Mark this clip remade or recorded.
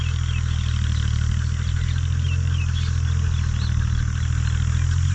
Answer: recorded